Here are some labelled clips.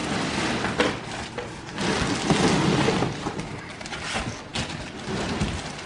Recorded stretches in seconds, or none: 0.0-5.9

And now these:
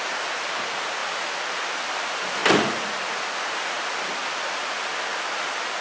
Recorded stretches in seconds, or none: 1.0-1.7

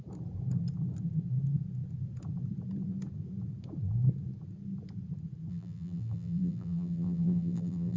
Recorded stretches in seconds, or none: 0.0-5.5

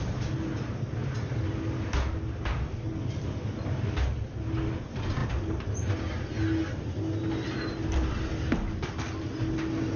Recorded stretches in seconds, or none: 0.0-10.0

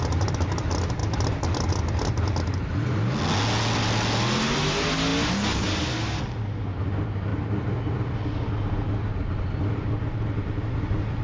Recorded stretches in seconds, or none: 0.0-11.2

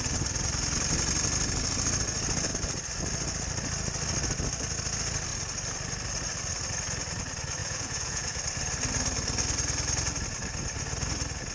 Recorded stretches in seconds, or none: 0.0-7.6; 8.4-11.5

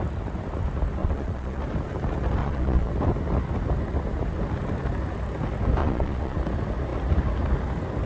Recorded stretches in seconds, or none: 0.0-1.0; 1.6-2.4; 2.9-5.8; 6.4-8.1

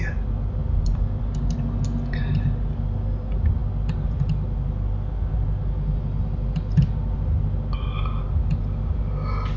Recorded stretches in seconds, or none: 0.0-9.6